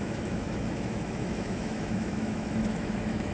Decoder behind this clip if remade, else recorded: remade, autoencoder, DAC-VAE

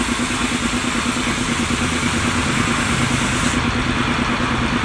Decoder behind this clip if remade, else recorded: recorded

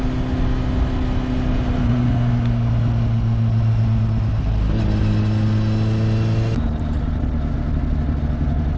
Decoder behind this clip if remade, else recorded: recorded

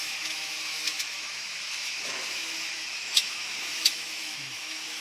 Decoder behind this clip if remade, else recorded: remade, autoencoder, DAC-VAE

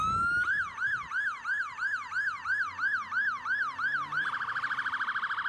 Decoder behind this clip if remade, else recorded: recorded